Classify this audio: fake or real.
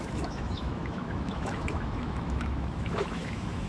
fake